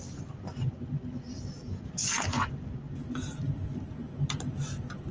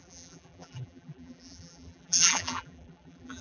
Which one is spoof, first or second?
second